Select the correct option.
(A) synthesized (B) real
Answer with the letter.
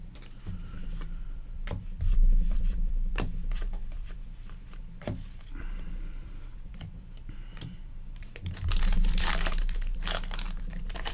A